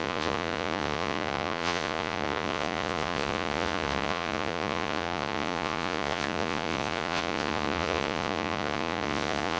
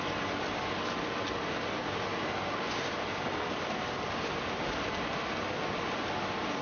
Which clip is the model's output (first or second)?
first